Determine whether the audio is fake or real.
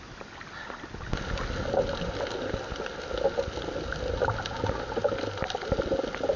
real